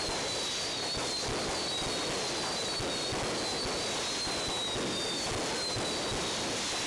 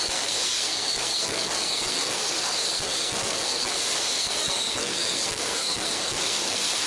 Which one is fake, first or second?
second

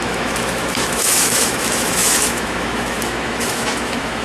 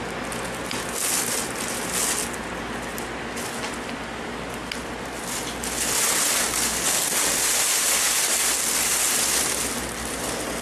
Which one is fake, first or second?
first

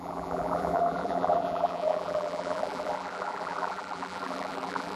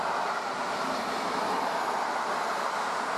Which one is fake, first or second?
first